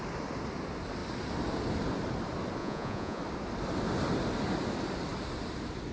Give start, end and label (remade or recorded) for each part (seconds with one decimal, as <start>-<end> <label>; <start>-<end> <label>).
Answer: 0.0-2.6 recorded; 2.6-3.2 remade; 3.2-5.9 recorded